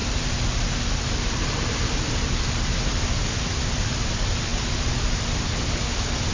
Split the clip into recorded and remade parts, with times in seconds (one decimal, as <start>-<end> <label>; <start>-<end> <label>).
0.0-6.3 recorded